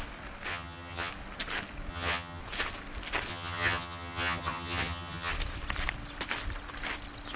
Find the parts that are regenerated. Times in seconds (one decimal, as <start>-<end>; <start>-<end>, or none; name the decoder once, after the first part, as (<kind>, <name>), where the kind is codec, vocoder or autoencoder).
0.5-1.1 (vocoder, HiFi-GAN); 1.9-2.4; 3.3-5.3